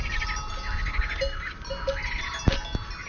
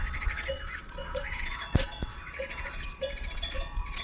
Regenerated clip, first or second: second